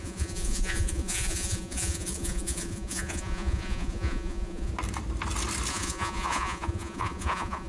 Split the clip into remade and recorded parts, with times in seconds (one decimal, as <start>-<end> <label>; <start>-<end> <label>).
0.0-4.7 remade; 4.7-5.7 recorded; 5.7-7.7 remade